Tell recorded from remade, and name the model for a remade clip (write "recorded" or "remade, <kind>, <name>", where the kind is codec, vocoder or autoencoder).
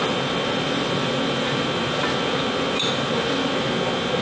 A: recorded